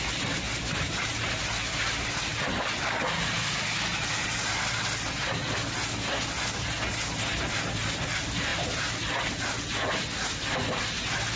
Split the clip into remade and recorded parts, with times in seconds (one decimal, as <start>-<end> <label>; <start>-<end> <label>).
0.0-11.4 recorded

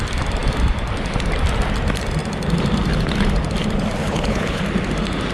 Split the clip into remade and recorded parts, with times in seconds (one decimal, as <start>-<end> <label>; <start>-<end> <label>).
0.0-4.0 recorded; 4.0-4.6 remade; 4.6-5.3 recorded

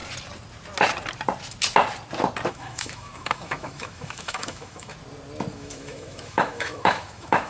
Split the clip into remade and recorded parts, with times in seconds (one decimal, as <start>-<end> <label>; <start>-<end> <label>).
0.0-2.5 recorded; 2.5-4.9 remade; 4.9-5.5 recorded; 5.5-7.5 remade

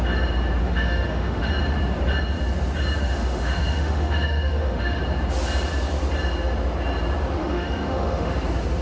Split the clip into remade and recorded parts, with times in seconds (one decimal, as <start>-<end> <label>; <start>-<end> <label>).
0.0-0.6 recorded; 0.6-1.5 remade; 1.5-3.0 recorded; 3.0-5.0 remade; 5.0-7.4 recorded; 7.4-8.3 remade; 8.3-8.8 recorded

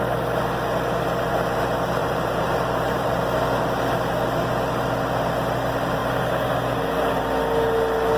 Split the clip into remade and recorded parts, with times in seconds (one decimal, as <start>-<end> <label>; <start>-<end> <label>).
0.0-2.0 recorded; 2.0-3.2 remade; 3.2-8.2 recorded

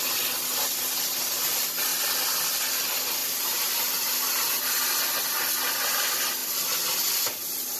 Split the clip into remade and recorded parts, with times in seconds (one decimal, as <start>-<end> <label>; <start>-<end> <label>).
0.0-3.2 recorded; 3.2-4.6 remade; 4.6-7.8 recorded

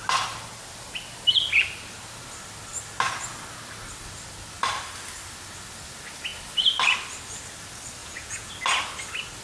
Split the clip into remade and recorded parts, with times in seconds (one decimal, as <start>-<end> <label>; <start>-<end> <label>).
0.0-8.0 recorded; 8.0-8.5 remade; 8.5-9.4 recorded

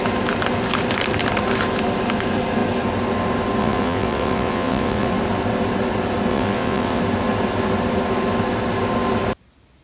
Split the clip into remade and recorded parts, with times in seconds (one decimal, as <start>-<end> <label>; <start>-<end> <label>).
0.0-3.6 recorded; 3.6-5.1 remade; 5.1-6.3 recorded; 6.3-7.0 remade; 7.0-9.8 recorded